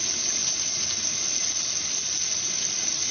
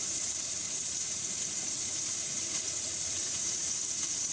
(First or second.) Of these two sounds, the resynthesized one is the second